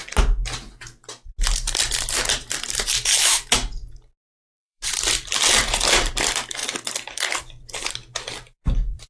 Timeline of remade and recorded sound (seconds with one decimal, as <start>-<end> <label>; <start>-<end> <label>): 0.0-2.5 recorded; 2.5-3.6 remade; 3.6-4.5 recorded; 4.5-9.1 remade